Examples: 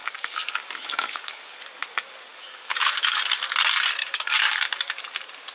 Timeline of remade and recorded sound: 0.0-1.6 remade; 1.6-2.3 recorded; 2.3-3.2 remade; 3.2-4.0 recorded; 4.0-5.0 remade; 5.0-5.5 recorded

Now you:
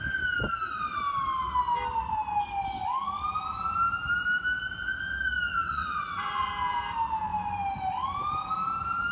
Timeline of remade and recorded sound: 0.0-5.5 recorded; 5.5-6.5 remade; 6.5-9.1 recorded

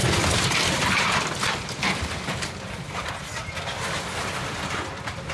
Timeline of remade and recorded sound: 0.0-5.3 recorded